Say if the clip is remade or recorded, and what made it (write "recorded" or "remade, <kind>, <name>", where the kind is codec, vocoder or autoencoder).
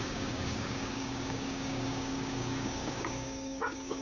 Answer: remade, codec, DAC